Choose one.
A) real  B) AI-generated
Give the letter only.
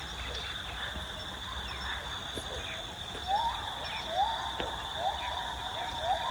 A